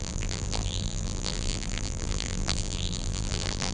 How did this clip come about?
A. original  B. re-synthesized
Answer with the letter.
B